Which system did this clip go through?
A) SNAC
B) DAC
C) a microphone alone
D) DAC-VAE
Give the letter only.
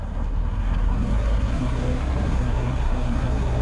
A